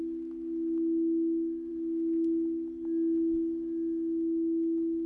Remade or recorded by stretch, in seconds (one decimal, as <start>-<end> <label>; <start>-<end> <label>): 0.0-5.1 recorded

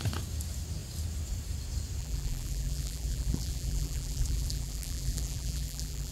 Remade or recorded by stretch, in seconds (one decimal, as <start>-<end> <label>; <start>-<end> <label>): 0.0-2.0 recorded; 2.0-6.1 remade

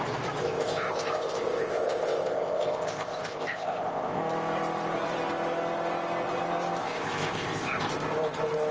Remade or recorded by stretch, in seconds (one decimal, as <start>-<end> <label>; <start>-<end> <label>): 0.0-0.4 recorded; 0.4-4.2 remade; 4.2-6.8 recorded; 6.8-7.9 remade; 7.9-8.7 recorded